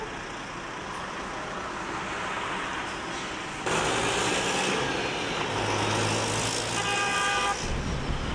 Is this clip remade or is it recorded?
recorded